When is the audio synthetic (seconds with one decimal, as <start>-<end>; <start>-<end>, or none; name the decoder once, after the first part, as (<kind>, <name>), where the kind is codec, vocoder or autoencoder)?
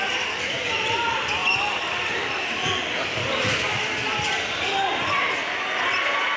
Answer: 1.4-5.2 (vocoder, BigVGAN v2)